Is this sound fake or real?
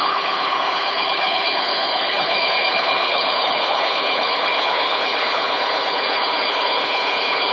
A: fake